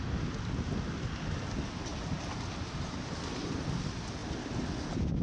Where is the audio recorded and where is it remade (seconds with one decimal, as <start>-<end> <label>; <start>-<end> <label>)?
0.0-5.2 recorded